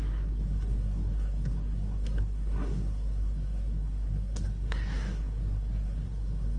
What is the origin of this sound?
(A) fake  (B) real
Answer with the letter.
A